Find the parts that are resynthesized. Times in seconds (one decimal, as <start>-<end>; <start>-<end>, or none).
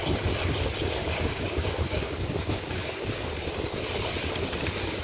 1.0-3.3